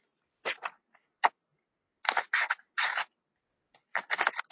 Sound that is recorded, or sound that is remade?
recorded